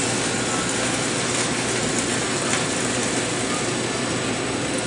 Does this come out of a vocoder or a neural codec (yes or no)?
no